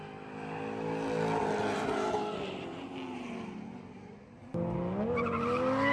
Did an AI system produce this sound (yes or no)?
no